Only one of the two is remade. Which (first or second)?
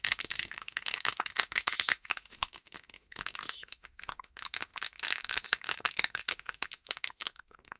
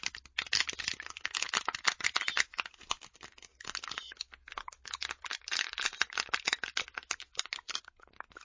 first